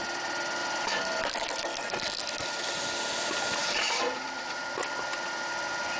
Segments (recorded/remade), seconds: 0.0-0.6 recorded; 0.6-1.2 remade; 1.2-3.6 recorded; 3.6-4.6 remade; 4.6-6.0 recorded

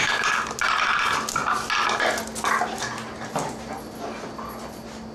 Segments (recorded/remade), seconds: 0.0-5.1 recorded

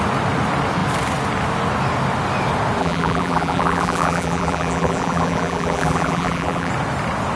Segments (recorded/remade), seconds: 0.0-2.8 recorded; 2.8-6.7 remade; 6.7-7.4 recorded

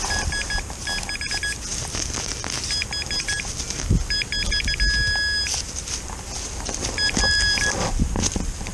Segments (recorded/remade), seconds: 0.0-8.7 recorded

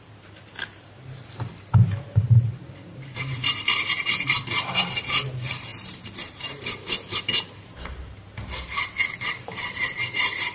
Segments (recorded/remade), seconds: 0.0-10.5 remade

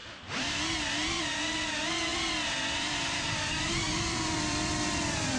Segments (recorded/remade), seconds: 0.0-1.2 remade; 1.2-2.1 recorded; 2.1-5.4 remade

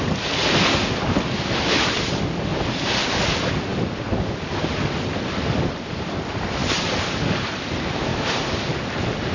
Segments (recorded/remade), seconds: 0.0-2.5 recorded; 2.5-3.2 remade; 3.2-9.3 recorded

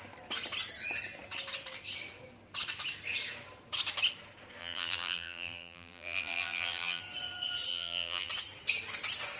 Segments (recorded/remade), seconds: 0.0-4.6 recorded; 4.6-7.0 remade; 7.0-7.7 recorded; 7.7-8.3 remade; 8.3-9.4 recorded